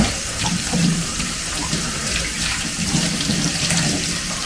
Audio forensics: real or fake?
fake